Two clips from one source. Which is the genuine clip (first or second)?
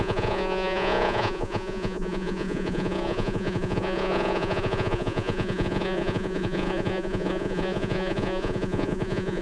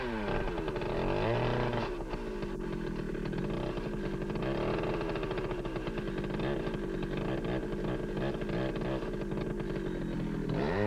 second